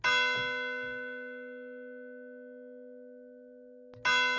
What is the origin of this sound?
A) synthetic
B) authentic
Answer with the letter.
B